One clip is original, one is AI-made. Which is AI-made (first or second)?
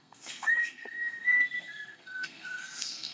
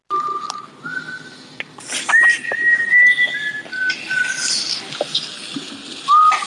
first